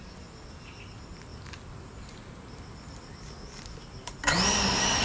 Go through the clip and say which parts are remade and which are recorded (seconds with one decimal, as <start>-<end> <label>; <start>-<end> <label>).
0.0-5.0 recorded